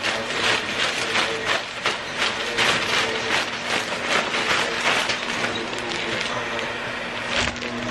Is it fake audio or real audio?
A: real